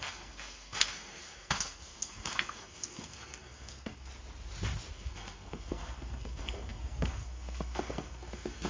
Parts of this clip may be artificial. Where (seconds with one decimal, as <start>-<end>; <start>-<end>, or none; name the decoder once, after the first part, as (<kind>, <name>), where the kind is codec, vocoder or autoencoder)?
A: 0.0-4.1 (codec, SNAC); 4.9-8.7